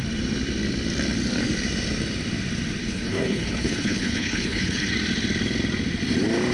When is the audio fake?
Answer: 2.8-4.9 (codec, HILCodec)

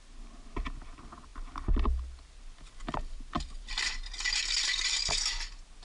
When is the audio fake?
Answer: none

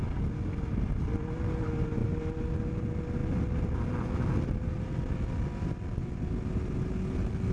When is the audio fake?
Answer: none

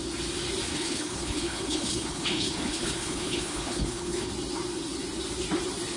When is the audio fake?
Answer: 0.7-4.3 (codec, HILCodec)

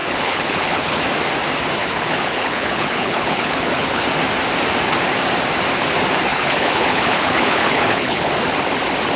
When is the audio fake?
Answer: 0.0-1.0 (codec, HILCodec); 1.8-4.0; 6.3-8.3

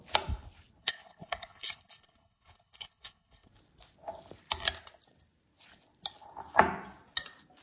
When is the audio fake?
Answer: 0.8-3.5 (codec, HILCodec)

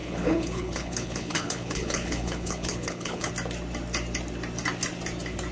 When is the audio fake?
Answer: 0.0-3.3 (codec, HILCodec)